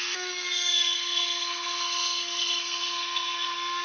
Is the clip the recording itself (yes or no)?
no